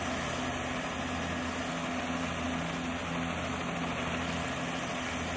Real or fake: real